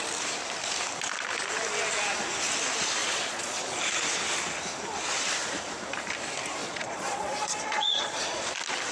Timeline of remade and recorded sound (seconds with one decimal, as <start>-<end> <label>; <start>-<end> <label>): 0.0-3.0 recorded; 3.0-3.6 remade; 3.6-6.6 recorded; 6.6-8.4 remade; 8.4-8.9 recorded